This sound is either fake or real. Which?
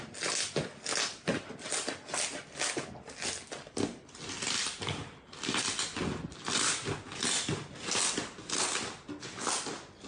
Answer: real